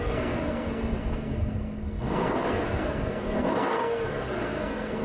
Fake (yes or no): yes